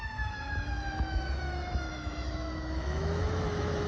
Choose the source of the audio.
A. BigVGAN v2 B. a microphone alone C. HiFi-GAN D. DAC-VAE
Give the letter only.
D